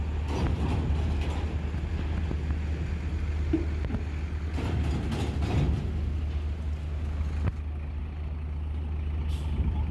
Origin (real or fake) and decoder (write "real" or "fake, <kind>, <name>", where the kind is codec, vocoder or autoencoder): real